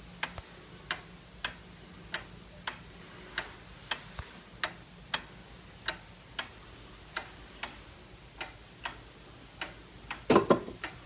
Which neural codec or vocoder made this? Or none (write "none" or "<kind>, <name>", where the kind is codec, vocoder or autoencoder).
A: none